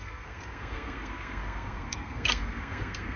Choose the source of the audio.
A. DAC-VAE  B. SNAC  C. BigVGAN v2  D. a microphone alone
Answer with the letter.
B